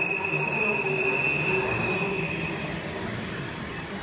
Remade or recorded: recorded